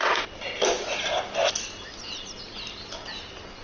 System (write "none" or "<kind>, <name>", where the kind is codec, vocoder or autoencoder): none